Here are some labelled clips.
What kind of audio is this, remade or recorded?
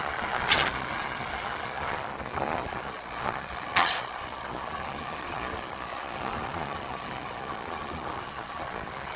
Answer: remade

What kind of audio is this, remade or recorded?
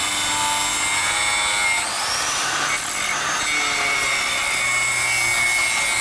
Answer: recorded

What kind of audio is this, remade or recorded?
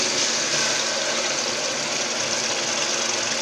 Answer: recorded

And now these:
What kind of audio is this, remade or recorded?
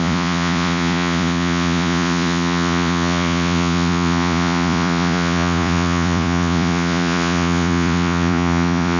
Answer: remade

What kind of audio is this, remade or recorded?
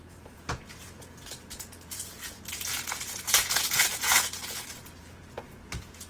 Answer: remade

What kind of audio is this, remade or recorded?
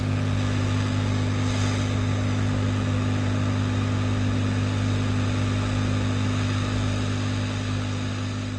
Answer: recorded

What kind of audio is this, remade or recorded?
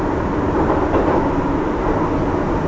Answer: recorded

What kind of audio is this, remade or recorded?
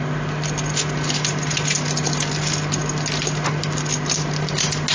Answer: recorded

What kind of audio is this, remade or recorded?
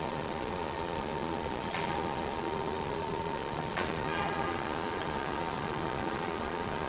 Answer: remade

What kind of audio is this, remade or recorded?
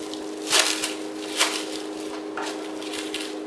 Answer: recorded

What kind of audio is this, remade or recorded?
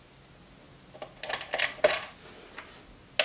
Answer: recorded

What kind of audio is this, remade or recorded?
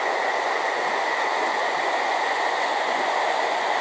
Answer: remade